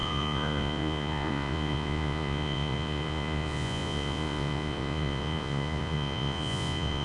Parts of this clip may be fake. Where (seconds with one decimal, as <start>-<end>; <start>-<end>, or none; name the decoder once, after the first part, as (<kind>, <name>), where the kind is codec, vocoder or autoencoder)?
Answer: 0.0-7.0 (vocoder, Vocos)